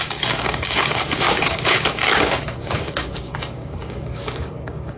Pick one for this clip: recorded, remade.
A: remade